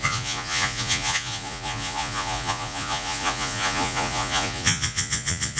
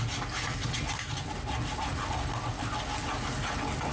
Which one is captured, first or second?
second